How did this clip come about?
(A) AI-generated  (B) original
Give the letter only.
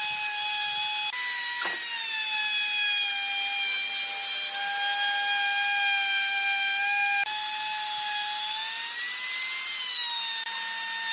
B